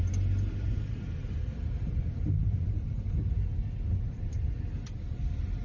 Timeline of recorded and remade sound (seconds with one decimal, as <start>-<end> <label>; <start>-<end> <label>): 0.0-2.4 recorded; 2.4-3.0 remade; 3.0-5.6 recorded

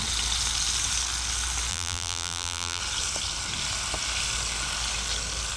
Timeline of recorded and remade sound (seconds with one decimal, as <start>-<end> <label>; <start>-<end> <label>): 0.0-1.7 recorded; 1.7-2.8 remade; 2.8-5.6 recorded